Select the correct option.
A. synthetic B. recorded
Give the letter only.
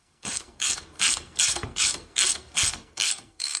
A